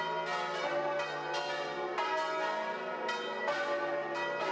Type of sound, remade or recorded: recorded